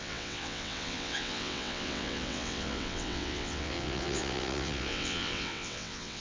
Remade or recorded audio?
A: remade